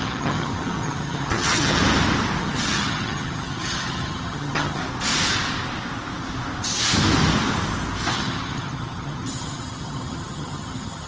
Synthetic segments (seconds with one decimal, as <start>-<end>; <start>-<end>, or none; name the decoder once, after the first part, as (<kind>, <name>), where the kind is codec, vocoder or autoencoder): 0.0-1.8 (vocoder, HiFi-GAN); 2.4-4.8; 8.1-11.1